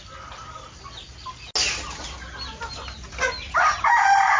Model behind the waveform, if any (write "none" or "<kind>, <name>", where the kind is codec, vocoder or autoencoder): none